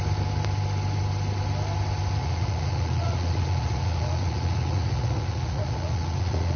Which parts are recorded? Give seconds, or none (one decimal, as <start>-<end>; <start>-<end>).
0.0-2.2